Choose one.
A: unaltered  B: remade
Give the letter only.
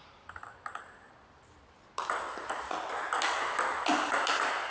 A